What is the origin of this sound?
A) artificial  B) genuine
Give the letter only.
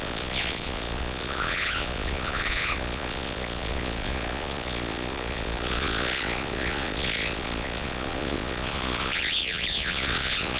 A